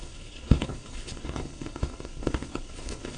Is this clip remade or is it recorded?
remade